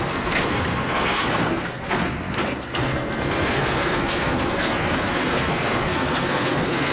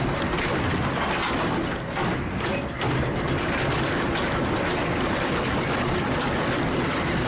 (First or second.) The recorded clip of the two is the second